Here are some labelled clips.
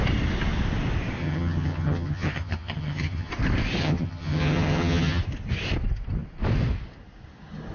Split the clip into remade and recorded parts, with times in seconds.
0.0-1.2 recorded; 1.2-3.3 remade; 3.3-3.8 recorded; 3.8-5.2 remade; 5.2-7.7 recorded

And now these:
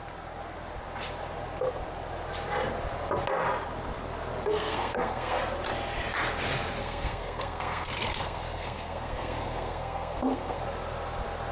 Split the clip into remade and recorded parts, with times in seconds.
0.0-4.5 recorded; 4.5-5.4 remade; 5.4-6.8 recorded; 6.8-10.6 remade; 10.6-11.5 recorded

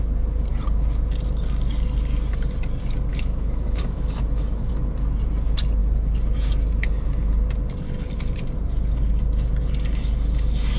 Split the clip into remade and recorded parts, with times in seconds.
0.0-3.1 recorded; 3.1-4.7 remade; 4.7-10.8 recorded

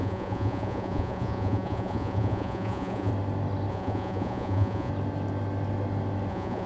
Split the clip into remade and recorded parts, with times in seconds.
0.0-3.1 remade; 3.1-3.7 recorded; 3.7-4.9 remade; 4.9-6.3 recorded; 6.3-6.7 remade

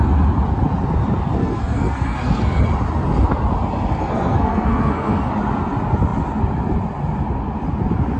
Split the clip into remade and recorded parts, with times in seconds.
0.0-1.4 recorded; 1.4-2.6 remade; 2.6-4.0 recorded; 4.0-5.3 remade; 5.3-8.2 recorded

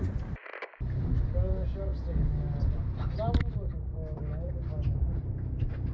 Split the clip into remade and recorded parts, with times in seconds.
0.0-3.9 recorded; 3.9-4.5 remade; 4.5-5.9 recorded

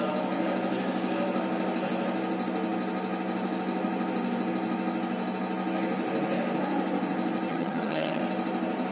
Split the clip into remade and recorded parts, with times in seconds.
0.0-7.5 recorded; 7.5-8.2 remade; 8.2-8.9 recorded

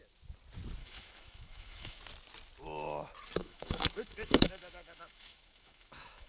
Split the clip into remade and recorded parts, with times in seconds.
0.0-0.8 recorded; 0.8-2.0 remade; 2.0-3.4 recorded; 3.4-6.3 remade